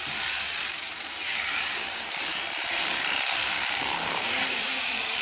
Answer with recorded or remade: remade